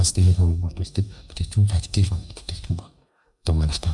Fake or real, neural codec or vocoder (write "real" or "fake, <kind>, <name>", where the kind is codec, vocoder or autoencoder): fake, codec, DAC